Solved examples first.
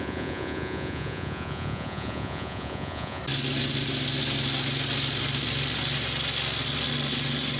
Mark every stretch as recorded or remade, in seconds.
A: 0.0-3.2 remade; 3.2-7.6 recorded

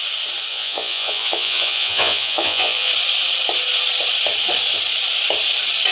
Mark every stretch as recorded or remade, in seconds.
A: 0.0-0.5 recorded; 0.5-2.9 remade; 2.9-5.9 recorded

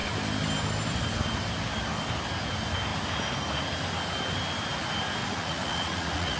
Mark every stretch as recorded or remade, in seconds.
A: 0.0-5.2 recorded; 5.2-6.4 remade